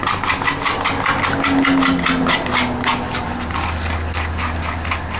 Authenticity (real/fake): real